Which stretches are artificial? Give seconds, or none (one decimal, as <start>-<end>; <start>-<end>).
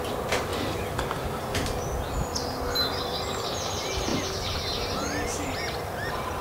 none